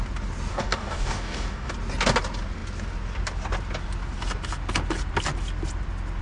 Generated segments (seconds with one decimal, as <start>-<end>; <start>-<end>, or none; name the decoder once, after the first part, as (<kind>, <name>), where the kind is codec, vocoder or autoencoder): 0.5-1.7 (codec, DAC)